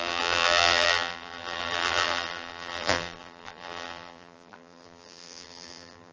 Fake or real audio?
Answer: fake